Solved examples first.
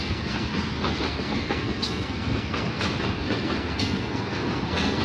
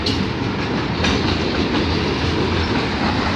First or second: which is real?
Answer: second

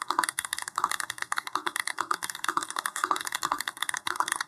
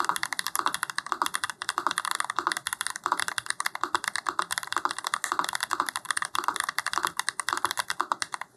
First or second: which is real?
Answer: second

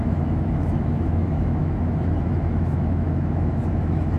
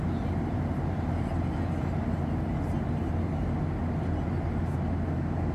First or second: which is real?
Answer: second